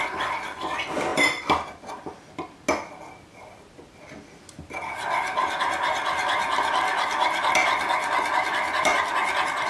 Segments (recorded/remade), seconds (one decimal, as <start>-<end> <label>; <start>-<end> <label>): 0.0-9.7 recorded